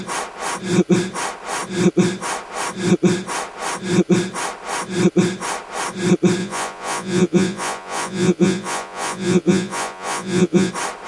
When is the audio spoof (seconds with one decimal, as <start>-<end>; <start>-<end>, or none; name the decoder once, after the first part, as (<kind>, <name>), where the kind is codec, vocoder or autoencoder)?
6.4-10.7 (vocoder, Vocos)